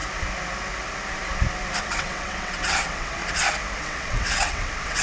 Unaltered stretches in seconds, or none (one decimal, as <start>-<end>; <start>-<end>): 0.0-1.8; 3.2-3.8